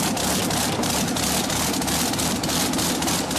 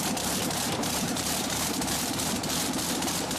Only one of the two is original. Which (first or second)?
first